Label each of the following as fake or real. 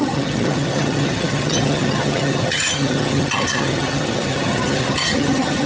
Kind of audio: fake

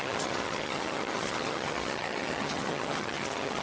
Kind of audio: fake